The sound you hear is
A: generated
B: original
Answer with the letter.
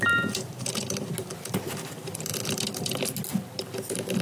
B